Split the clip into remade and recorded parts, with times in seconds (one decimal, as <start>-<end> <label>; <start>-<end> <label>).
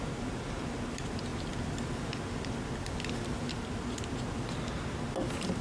0.0-5.6 recorded